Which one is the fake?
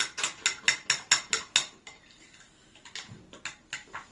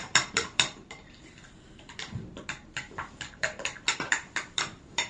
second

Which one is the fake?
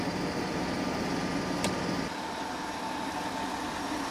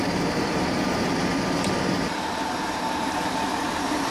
second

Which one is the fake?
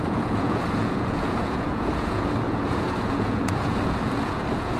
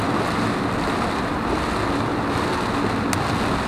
first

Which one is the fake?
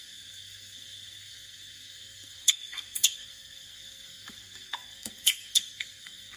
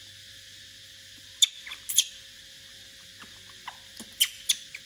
first